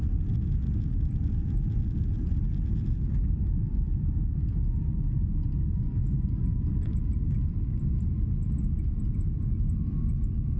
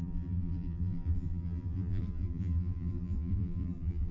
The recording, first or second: first